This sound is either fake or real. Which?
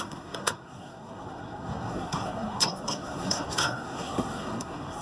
fake